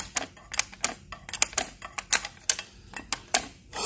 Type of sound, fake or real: real